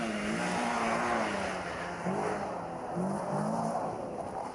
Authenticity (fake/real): real